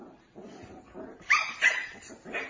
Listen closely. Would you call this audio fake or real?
fake